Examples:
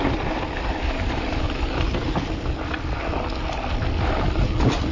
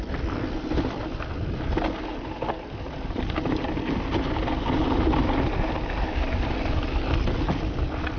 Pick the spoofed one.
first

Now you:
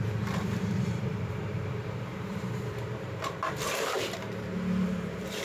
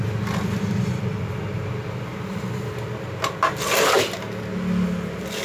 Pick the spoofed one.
first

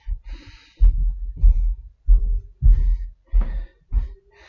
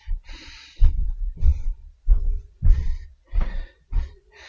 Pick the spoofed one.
second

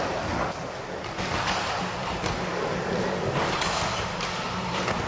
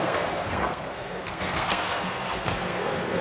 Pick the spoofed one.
second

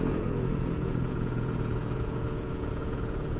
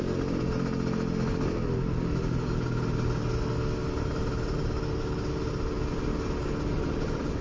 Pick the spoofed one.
first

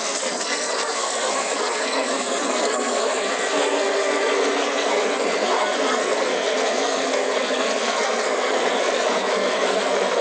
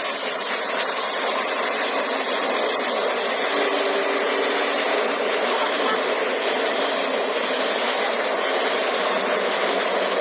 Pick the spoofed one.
first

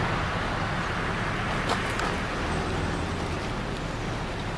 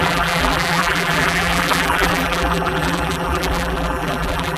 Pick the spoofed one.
second